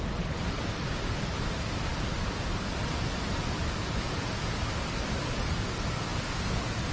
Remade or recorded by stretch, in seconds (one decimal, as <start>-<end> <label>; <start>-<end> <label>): 0.0-3.8 recorded; 3.8-4.6 remade; 4.6-6.1 recorded; 6.1-6.9 remade